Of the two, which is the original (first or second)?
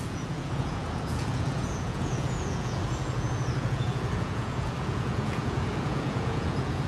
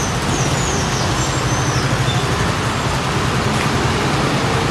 second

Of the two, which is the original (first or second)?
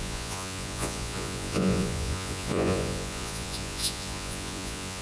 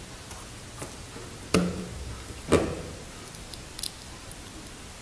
second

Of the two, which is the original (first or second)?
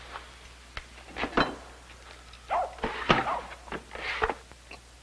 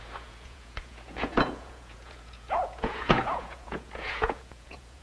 first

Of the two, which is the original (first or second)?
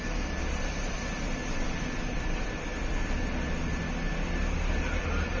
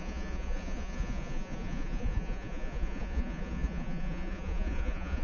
first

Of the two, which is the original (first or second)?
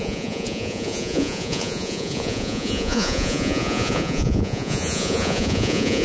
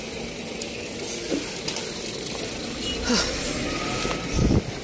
second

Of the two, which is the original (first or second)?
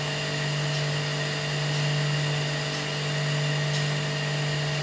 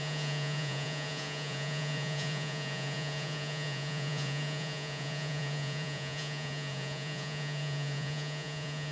first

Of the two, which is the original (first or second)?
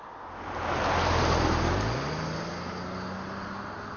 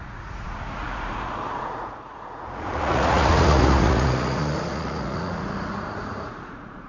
first